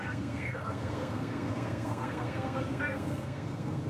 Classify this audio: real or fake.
fake